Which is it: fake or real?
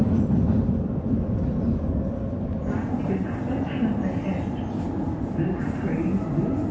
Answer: real